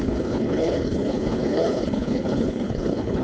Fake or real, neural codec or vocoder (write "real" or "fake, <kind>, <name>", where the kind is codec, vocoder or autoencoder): fake, codec, HILCodec